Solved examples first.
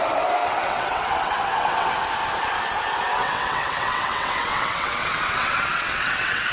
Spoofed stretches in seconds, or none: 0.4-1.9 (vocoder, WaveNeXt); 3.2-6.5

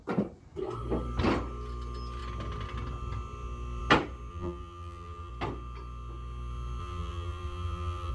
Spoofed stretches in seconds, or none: 4.3-5.3 (vocoder, BigVGAN v2); 6.8-8.1